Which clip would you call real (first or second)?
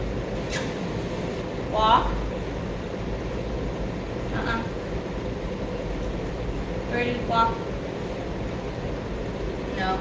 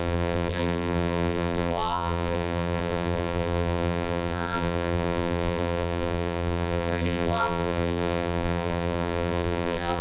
first